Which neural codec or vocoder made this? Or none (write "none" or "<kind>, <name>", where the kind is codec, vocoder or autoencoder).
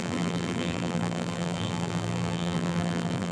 vocoder, BigVGAN v2